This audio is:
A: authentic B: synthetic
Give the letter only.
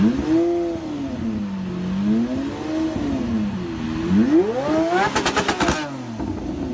A